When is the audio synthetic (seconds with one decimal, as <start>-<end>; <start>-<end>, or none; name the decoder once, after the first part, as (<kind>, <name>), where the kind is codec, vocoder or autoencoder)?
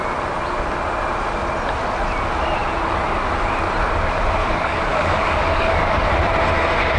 4.4-6.1 (codec, DAC)